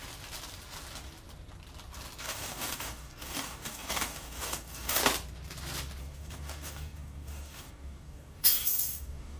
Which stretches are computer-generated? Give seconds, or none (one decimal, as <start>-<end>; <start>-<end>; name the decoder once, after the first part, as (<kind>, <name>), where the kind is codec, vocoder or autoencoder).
2.2-5.0 (codec, DAC); 6.0-9.4